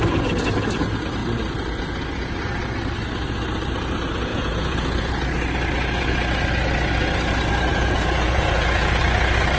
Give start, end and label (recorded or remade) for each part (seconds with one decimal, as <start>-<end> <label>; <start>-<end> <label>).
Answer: 0.0-4.3 recorded; 4.3-5.1 remade; 5.1-7.7 recorded; 7.7-9.0 remade; 9.0-9.6 recorded